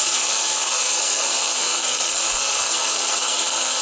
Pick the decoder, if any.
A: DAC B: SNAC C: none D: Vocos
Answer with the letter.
B